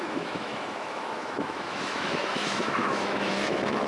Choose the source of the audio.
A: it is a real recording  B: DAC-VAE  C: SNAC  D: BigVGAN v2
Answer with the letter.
B